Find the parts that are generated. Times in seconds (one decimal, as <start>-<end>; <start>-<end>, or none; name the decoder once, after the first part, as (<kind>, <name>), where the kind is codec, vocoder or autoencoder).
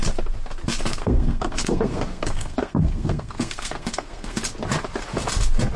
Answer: 0.9-4.4 (codec, SNAC)